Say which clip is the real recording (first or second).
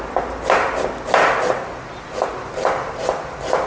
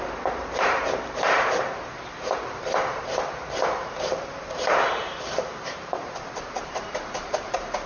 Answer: first